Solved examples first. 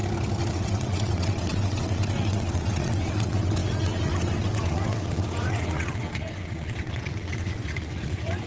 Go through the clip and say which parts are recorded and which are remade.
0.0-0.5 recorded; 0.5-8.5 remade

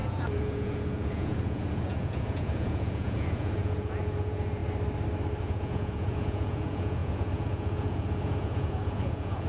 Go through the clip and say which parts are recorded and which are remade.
0.0-4.6 remade; 4.6-5.4 recorded; 5.4-9.5 remade